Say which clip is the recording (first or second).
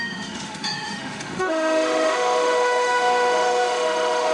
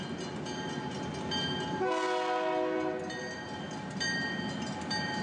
second